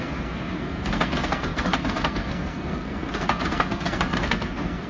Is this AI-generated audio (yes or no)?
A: yes